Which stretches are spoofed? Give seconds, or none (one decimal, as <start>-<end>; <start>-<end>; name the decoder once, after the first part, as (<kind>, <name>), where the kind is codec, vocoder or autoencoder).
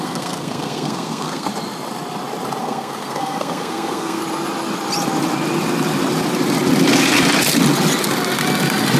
0.0-1.5 (codec, SNAC); 2.6-4.2